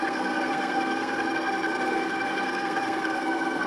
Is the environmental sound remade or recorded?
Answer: remade